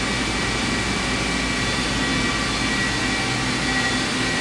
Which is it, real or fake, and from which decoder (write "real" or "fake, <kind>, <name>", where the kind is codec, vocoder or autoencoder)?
real